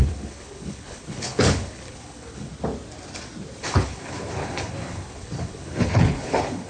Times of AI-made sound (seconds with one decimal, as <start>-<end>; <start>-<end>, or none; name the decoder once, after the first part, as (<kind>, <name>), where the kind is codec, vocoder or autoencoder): 0.0-2.5 (codec, HILCodec); 3.6-6.7